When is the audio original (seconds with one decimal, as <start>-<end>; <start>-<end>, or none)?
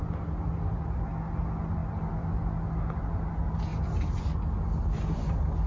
0.0-5.7